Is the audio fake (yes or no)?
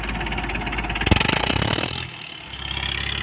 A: no